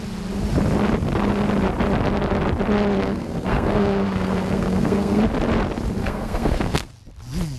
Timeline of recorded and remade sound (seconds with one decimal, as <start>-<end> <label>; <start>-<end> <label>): 0.0-3.0 recorded; 3.0-5.2 remade; 5.2-6.0 recorded; 6.0-6.9 remade; 6.9-7.6 recorded